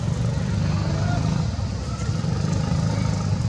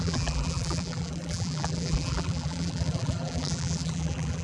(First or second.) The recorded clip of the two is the first